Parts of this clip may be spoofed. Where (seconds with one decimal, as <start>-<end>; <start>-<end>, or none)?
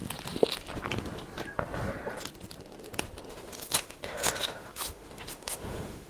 3.3-6.1